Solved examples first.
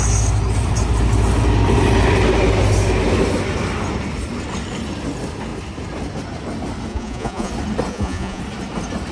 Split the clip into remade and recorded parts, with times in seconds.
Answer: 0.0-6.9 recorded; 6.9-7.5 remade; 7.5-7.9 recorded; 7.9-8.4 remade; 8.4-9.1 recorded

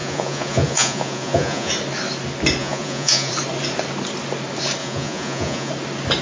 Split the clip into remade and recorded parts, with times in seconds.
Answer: 0.0-1.7 remade; 1.7-2.6 recorded; 2.6-3.3 remade; 3.3-4.8 recorded; 4.8-5.7 remade; 5.7-6.2 recorded

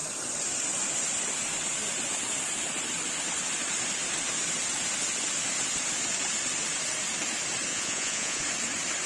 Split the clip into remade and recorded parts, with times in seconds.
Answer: 0.0-7.7 recorded; 7.7-8.4 remade; 8.4-9.1 recorded

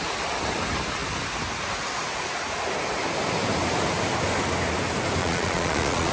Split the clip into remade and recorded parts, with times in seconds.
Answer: 0.0-5.2 recorded; 5.2-6.1 remade